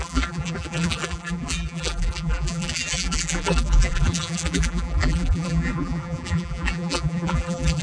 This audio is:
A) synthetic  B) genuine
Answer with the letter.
A